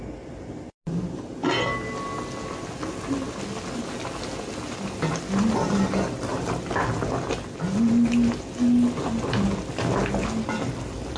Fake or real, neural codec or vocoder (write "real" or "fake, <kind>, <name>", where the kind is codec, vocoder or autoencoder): real